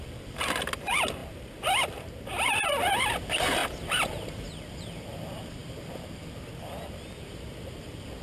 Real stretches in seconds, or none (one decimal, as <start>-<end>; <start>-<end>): 0.0-8.2